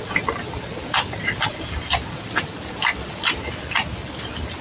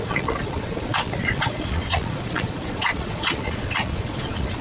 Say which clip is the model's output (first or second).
second